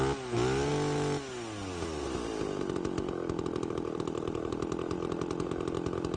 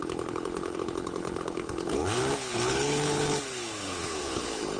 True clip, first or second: first